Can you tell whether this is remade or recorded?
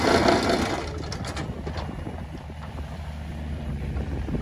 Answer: recorded